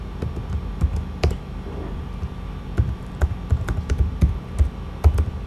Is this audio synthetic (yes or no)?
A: no